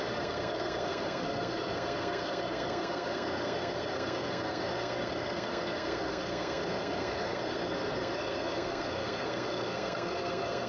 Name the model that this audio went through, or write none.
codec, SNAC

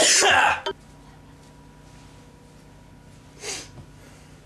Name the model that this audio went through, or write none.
none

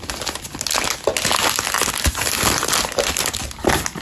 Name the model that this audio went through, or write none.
none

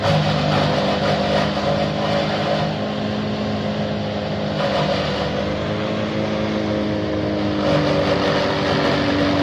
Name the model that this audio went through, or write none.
none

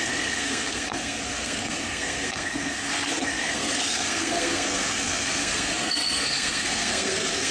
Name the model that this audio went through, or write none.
codec, SNAC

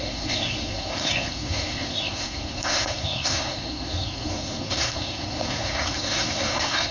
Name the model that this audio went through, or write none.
codec, SNAC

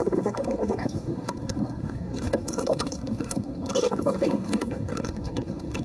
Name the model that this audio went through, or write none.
codec, SNAC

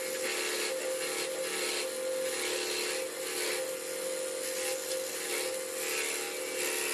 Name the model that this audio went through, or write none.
none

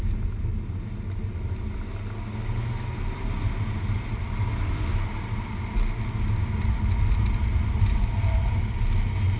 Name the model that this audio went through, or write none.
none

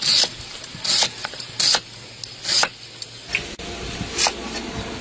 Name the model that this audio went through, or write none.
none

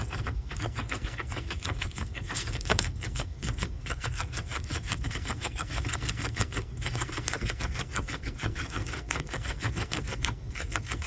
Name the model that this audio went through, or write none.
codec, SNAC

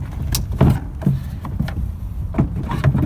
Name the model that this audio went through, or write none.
none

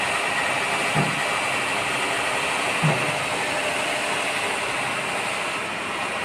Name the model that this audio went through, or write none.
none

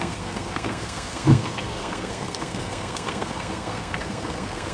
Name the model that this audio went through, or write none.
codec, SNAC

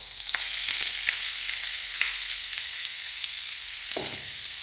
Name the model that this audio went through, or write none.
codec, SNAC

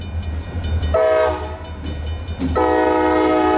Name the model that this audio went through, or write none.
none